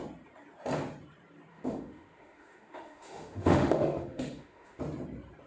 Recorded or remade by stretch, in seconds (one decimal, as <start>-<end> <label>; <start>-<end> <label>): 0.0-1.5 recorded; 1.5-4.8 remade; 4.8-5.5 recorded